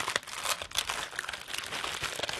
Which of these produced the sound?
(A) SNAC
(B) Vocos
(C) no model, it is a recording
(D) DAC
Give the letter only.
C